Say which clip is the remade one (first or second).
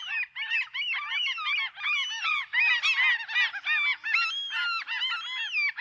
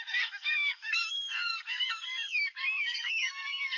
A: second